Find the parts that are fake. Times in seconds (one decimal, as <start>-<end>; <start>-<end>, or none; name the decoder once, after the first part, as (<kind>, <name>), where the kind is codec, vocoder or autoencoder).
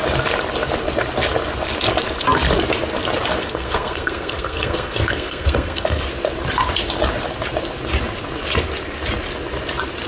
3.4-6.0 (codec, SNAC)